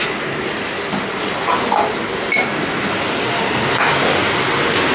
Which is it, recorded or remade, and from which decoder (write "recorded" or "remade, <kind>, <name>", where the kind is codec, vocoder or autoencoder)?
recorded